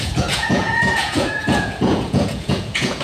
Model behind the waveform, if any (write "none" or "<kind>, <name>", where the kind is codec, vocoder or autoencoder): vocoder, Vocos